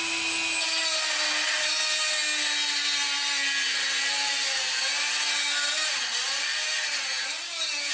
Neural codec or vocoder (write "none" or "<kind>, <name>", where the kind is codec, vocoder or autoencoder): none